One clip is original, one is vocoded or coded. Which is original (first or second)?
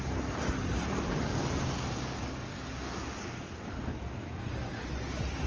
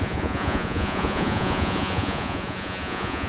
first